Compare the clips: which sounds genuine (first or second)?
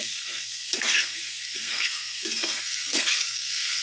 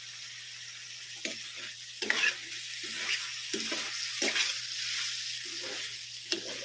second